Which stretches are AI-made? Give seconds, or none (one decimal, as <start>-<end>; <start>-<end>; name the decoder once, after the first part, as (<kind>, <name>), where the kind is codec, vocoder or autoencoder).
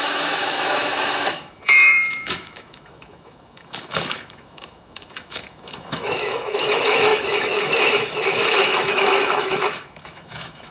0.0-10.7 (autoencoder, DAC-VAE)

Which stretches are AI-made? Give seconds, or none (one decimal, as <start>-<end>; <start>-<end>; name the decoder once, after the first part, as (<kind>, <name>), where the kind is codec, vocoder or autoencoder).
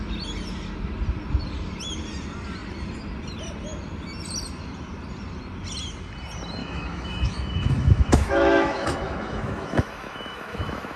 6.6-11.0 (autoencoder, DAC-VAE)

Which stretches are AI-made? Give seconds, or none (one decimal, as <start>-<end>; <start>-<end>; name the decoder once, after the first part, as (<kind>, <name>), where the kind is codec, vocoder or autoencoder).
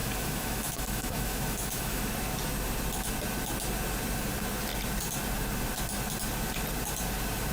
0.0-2.0 (autoencoder, DAC-VAE)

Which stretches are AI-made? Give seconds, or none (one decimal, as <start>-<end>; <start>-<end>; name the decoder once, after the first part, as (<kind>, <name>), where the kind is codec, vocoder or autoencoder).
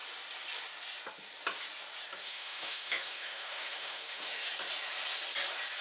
2.2-4.5 (autoencoder, DAC-VAE)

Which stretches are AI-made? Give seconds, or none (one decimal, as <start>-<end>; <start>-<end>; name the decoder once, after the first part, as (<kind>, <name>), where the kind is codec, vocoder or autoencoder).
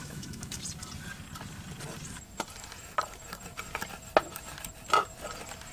0.0-0.6 (autoencoder, DAC-VAE)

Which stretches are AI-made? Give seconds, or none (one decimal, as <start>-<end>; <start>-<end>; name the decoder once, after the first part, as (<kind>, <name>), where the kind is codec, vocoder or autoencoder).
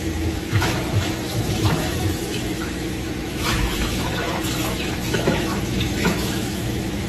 0.0-7.1 (autoencoder, DAC-VAE)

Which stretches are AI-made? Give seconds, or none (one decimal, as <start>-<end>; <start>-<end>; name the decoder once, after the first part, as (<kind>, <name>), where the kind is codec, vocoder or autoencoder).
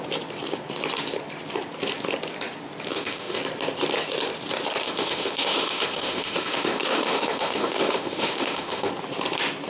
2.9-3.4 (autoencoder, DAC-VAE); 4.8-8.9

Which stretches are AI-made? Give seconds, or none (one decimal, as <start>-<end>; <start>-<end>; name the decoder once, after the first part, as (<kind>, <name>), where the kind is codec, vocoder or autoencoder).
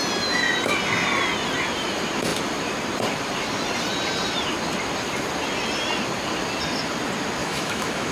7.4-8.1 (autoencoder, DAC-VAE)